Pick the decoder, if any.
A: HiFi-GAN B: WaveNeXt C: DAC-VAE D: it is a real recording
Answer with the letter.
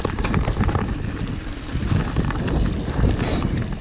D